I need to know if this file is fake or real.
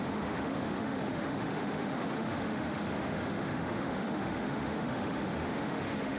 fake